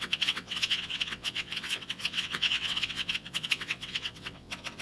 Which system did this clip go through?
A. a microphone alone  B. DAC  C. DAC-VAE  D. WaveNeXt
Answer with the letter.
D